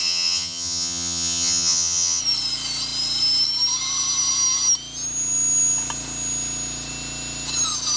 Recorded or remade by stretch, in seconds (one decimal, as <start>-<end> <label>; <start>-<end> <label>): 0.0-2.2 remade; 2.2-8.0 recorded